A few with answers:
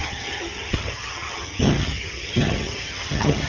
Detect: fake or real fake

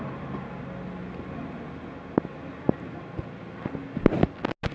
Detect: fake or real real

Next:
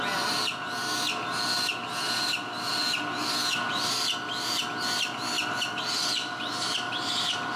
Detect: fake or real real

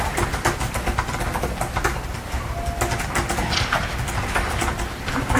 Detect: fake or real real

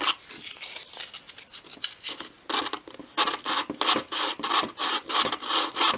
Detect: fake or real real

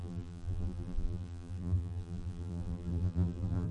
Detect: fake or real fake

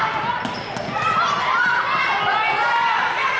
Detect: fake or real real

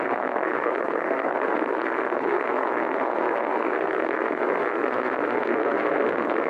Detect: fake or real fake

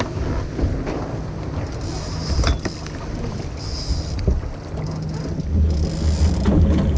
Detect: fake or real real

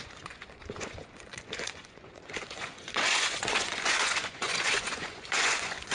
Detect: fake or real fake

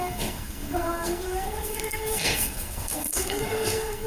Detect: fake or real fake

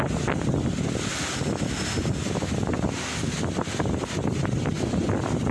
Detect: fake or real real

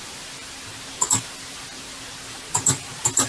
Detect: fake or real real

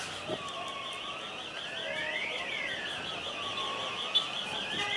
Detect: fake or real real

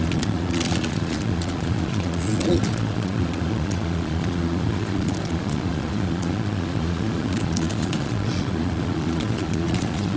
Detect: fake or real fake